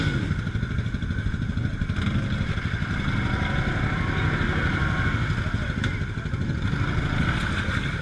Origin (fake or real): real